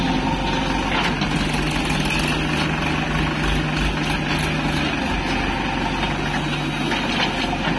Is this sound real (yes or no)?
yes